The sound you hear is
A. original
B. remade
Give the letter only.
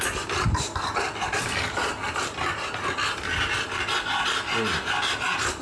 A